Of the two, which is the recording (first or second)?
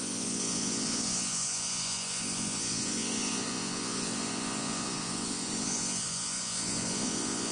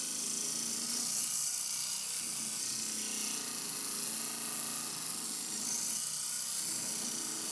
second